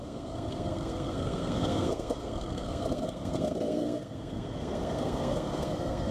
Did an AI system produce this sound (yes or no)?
yes